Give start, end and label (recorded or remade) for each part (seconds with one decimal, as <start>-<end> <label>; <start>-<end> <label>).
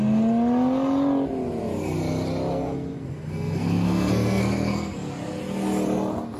0.0-2.5 recorded; 2.5-5.1 remade; 5.1-6.4 recorded